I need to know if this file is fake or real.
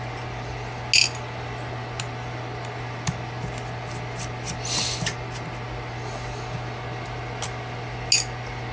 real